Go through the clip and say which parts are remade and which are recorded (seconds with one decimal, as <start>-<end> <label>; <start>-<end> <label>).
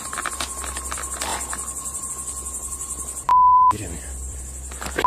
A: 0.0-3.3 recorded; 3.3-4.4 remade; 4.4-5.1 recorded